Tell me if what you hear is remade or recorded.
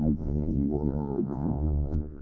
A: remade